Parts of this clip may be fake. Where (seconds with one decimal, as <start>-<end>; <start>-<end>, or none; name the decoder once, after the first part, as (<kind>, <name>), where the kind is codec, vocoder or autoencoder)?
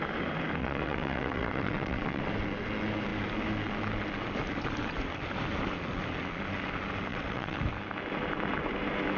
0.6-2.2 (vocoder, WaveNeXt); 7.1-7.6